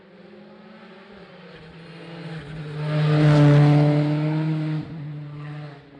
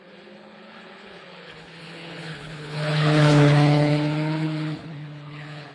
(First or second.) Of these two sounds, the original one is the first